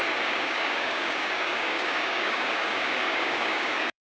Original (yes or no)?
no